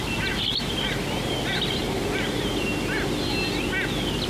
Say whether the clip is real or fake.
real